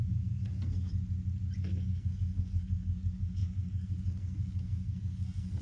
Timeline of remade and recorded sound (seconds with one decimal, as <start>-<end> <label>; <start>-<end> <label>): 0.0-0.9 remade; 0.9-1.6 recorded; 1.6-5.6 remade